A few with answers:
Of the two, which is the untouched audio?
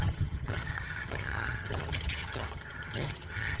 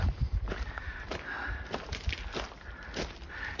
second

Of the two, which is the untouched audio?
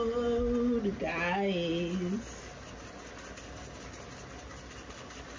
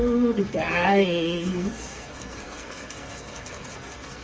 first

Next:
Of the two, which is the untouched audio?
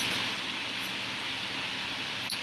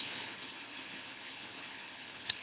first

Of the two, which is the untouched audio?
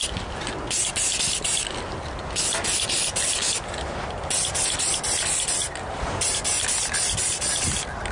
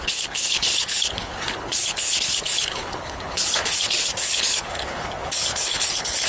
first